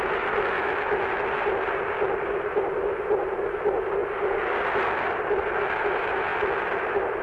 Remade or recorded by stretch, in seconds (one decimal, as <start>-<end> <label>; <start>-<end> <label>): 0.0-7.2 recorded